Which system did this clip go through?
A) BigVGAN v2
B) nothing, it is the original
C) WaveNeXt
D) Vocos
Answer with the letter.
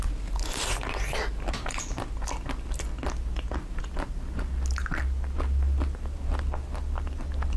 B